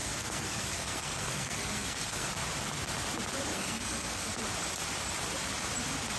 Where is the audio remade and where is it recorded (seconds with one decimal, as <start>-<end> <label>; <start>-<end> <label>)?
0.0-2.3 remade; 2.3-3.5 recorded; 3.5-4.4 remade; 4.4-6.2 recorded